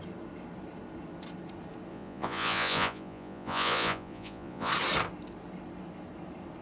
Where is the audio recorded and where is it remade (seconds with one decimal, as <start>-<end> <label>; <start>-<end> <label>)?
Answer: 0.0-1.9 recorded; 1.9-4.7 remade; 4.7-6.6 recorded